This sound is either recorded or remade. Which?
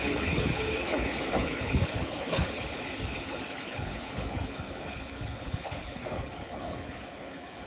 remade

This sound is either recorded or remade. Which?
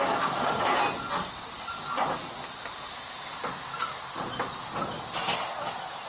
recorded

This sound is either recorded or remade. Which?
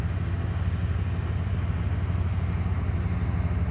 recorded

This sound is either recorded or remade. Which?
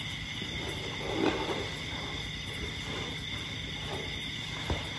recorded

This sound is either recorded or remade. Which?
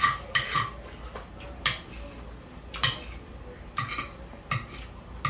recorded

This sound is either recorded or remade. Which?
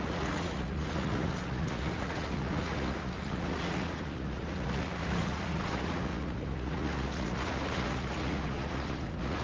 remade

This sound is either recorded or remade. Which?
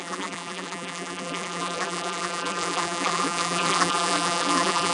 remade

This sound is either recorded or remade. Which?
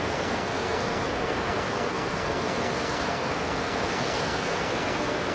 remade